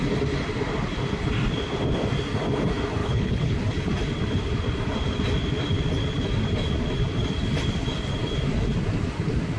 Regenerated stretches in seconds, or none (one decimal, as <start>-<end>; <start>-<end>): 3.0-3.6